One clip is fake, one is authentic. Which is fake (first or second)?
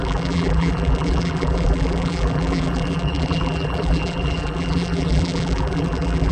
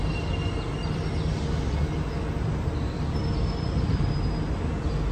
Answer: first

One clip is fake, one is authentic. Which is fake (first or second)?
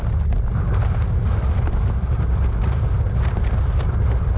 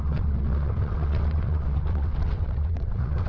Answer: second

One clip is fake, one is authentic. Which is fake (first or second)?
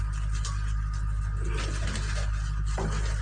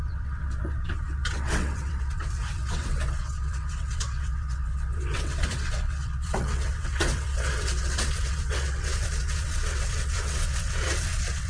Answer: second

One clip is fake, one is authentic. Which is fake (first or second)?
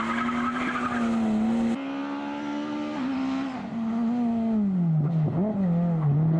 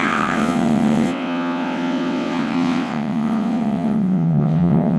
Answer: second